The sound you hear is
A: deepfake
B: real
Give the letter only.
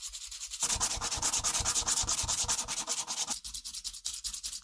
B